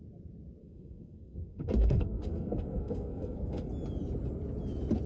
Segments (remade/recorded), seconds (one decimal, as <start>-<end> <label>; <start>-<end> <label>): 0.0-0.6 recorded; 0.6-3.7 remade; 3.7-5.1 recorded